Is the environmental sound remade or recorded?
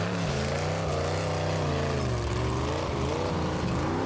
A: recorded